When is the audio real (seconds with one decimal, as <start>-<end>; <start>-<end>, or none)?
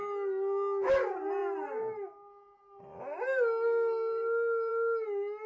0.0-5.5